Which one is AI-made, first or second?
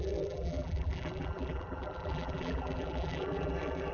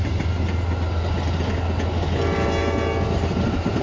first